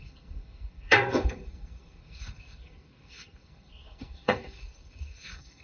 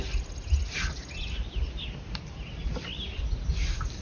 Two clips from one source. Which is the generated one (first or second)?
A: first